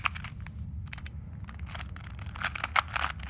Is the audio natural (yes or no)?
yes